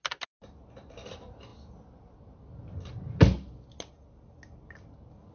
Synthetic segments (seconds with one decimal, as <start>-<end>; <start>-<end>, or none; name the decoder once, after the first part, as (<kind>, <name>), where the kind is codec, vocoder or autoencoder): none